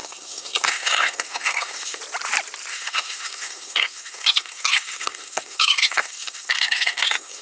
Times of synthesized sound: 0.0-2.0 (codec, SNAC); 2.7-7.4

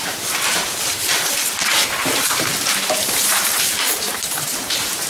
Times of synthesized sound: 1.8-5.1 (vocoder, BigVGAN v2)

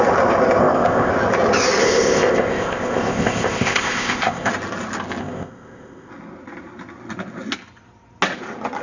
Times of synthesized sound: 0.6-1.1 (codec, ZipCodec); 1.8-4.5; 5.2-6.1

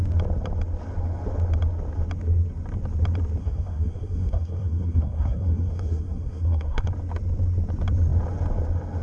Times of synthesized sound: 3.4-6.9 (codec, SNAC)